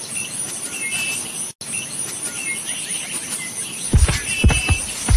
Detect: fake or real real